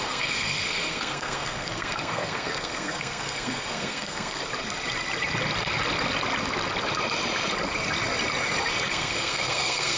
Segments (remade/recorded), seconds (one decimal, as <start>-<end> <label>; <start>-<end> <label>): 0.0-4.4 remade; 4.4-8.9 recorded; 8.9-10.0 remade